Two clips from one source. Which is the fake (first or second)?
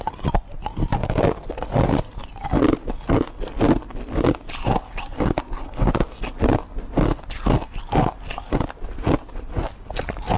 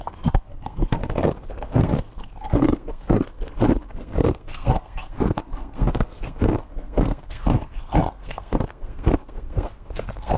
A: second